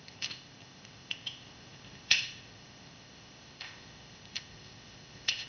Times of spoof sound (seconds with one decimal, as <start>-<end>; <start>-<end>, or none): 0.0-5.5